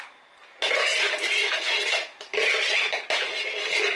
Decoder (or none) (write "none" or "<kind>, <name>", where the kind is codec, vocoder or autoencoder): none